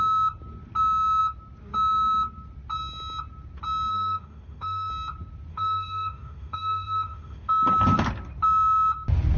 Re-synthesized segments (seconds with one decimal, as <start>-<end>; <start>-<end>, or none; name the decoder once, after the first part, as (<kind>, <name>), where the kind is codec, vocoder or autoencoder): 3.9-4.9 (autoencoder, DAC-VAE); 5.5-7.5